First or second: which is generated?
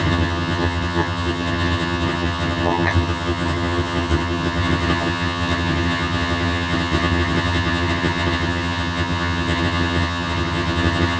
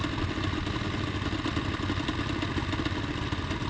first